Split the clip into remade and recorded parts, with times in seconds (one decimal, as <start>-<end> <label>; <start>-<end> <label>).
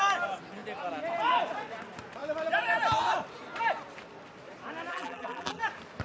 0.0-4.9 recorded; 4.9-5.6 remade; 5.6-6.0 recorded